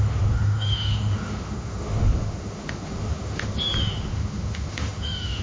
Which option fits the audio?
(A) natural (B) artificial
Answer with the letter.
B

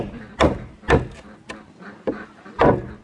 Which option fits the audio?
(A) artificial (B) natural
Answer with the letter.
B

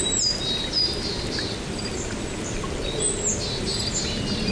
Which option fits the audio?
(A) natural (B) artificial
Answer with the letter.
A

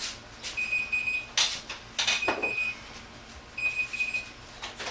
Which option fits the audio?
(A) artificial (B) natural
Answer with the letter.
B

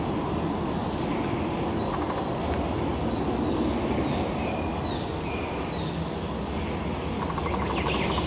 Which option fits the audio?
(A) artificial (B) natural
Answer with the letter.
B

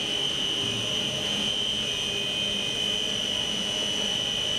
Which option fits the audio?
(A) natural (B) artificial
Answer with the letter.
A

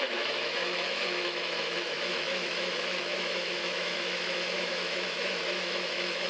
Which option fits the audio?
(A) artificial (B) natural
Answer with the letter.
A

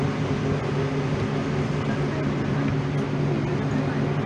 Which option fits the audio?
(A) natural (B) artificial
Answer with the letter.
A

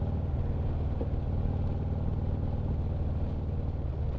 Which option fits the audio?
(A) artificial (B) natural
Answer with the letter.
B